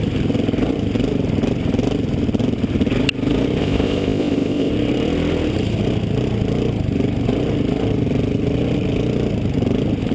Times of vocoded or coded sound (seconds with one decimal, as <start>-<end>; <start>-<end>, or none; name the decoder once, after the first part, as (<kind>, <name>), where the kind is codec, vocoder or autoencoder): 3.6-4.7 (codec, ZipCodec)